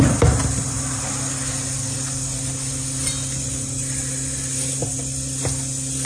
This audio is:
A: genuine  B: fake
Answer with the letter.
A